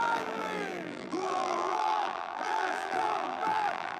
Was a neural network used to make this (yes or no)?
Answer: yes